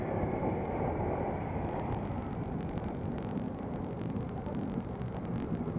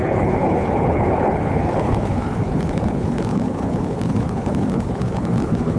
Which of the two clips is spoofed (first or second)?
second